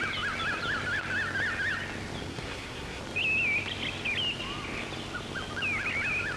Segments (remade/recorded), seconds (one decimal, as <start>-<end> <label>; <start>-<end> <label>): 0.0-2.3 recorded; 2.3-3.0 remade; 3.0-6.4 recorded